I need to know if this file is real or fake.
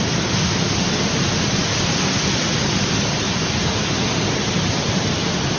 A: real